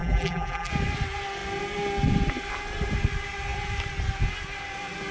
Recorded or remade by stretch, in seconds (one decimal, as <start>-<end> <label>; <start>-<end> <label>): 0.0-0.7 remade; 0.7-5.1 recorded